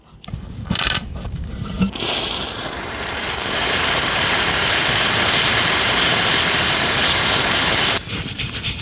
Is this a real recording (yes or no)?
no